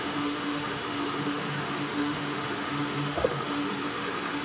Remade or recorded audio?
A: remade